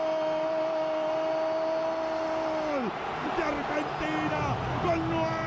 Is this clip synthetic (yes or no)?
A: no